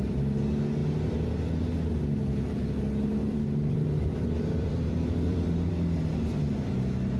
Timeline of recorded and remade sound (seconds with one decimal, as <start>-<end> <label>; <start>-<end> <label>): 0.0-3.2 recorded; 3.2-5.7 remade; 5.7-7.2 recorded